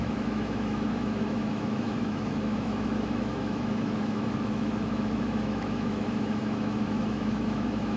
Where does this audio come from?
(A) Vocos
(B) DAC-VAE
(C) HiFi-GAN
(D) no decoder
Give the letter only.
B